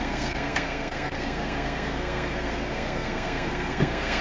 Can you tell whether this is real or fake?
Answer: fake